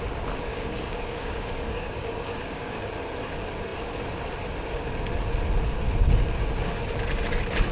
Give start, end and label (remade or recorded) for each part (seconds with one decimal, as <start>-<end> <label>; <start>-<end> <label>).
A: 0.0-0.5 recorded; 0.5-2.9 remade; 2.9-7.7 recorded